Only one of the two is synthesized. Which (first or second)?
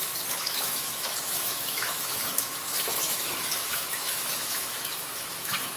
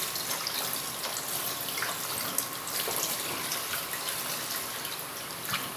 first